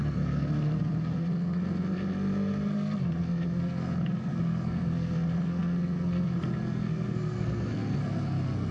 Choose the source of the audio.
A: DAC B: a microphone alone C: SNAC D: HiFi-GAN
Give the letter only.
C